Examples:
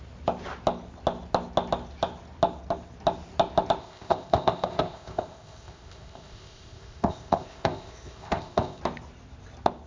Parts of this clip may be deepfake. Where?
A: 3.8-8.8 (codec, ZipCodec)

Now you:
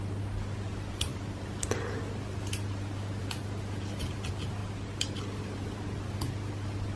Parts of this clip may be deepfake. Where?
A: none